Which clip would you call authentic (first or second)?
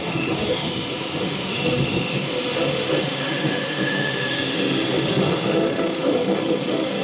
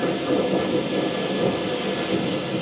second